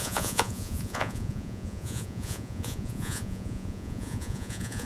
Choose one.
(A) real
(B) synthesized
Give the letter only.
B